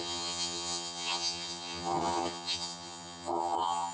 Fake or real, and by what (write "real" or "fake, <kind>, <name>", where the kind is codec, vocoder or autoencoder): fake, vocoder, HiFi-GAN